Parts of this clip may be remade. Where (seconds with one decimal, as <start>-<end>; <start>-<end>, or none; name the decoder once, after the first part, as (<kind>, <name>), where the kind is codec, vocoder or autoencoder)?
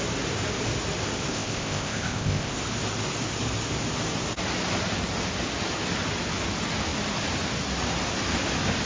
1.3-2.5 (codec, ZipCodec)